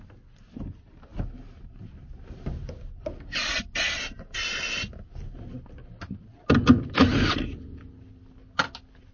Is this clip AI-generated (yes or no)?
no